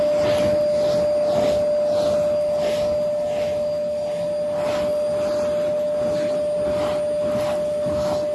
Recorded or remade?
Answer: recorded